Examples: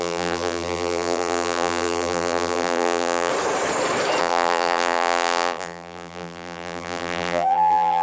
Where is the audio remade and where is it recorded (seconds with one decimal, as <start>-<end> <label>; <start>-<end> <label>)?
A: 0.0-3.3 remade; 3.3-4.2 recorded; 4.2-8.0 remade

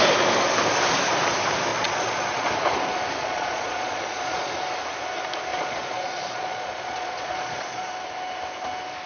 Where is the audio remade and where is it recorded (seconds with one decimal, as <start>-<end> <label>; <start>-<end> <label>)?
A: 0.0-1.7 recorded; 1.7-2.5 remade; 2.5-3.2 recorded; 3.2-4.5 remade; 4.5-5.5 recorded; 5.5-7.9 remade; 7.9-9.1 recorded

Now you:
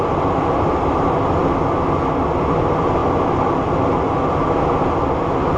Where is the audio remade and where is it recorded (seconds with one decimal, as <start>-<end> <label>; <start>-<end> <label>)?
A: 0.0-5.6 recorded

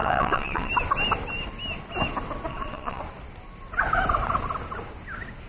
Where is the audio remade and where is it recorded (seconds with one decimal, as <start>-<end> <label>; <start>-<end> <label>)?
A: 0.0-0.7 remade; 0.7-2.5 recorded; 2.5-3.0 remade; 3.0-5.5 recorded

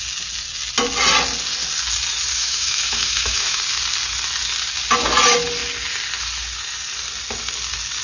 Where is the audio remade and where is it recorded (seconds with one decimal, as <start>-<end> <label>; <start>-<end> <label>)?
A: 0.0-2.3 recorded; 2.3-3.6 remade; 3.6-8.0 recorded

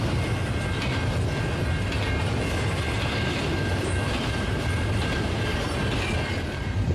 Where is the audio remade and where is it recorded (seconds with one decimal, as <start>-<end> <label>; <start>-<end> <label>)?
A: 0.0-0.4 remade; 0.4-3.3 recorded; 3.3-5.5 remade; 5.5-6.5 recorded; 6.5-6.9 remade